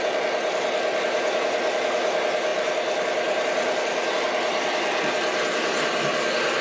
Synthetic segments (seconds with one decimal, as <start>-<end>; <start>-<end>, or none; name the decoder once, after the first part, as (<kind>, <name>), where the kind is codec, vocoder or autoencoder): none